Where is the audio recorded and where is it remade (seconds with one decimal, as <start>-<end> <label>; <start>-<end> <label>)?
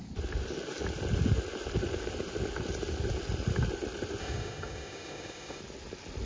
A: 0.0-4.2 recorded; 4.2-5.6 remade; 5.6-6.2 recorded